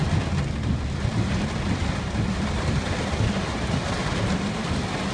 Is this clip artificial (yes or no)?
no